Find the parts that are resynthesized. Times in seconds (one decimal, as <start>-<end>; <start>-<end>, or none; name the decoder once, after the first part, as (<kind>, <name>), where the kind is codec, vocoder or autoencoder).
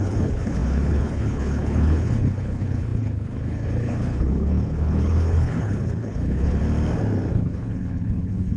0.0-6.6 (codec, HILCodec); 7.3-8.6